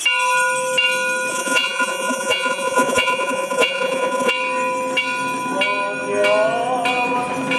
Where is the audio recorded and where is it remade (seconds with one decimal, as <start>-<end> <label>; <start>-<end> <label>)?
0.0-1.3 recorded; 1.3-4.3 remade; 4.3-7.6 recorded